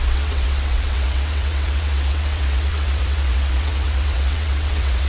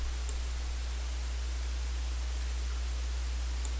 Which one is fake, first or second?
first